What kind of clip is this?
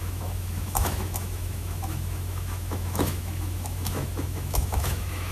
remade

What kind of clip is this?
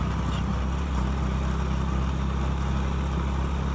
recorded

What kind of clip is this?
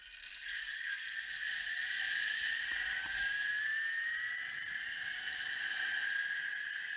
recorded